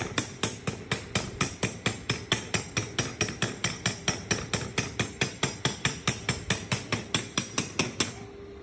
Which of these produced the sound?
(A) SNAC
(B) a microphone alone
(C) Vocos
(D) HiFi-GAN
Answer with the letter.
B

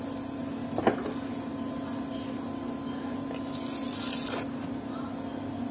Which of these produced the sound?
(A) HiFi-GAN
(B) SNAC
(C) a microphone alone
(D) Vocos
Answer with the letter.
C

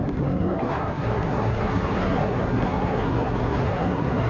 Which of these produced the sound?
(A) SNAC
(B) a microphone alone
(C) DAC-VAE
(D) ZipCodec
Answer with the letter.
A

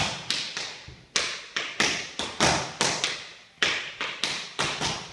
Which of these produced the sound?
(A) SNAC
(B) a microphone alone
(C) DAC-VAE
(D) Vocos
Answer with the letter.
B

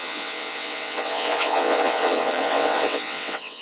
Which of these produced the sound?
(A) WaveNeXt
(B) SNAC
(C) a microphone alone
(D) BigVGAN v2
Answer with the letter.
A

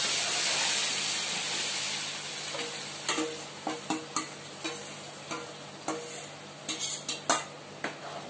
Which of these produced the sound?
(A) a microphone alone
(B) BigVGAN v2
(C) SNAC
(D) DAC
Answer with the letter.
A